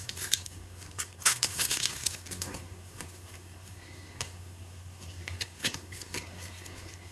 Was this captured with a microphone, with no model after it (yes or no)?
no